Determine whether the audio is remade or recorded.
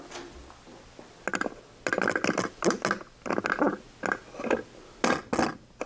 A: recorded